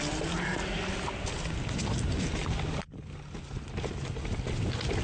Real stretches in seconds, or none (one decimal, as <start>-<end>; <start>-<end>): 0.0-5.0